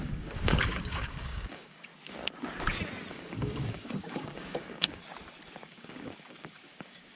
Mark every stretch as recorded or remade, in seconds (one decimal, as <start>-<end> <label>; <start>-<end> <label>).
0.0-1.9 remade; 1.9-3.1 recorded; 3.1-5.0 remade; 5.0-5.6 recorded; 5.6-7.2 remade